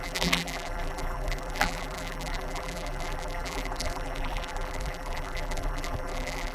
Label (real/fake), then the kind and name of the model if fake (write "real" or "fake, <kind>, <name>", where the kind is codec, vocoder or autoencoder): fake, vocoder, BigVGAN v2